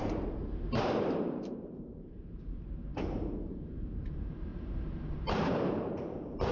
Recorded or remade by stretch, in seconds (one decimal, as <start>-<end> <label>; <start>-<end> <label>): 0.0-2.9 remade; 2.9-3.5 recorded; 3.5-6.5 remade